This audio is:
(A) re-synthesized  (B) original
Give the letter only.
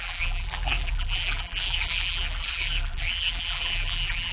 A